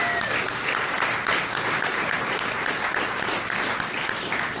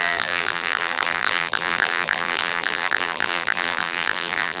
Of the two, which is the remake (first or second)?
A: second